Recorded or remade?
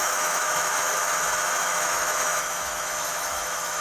remade